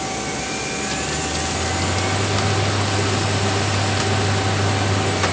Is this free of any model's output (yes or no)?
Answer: yes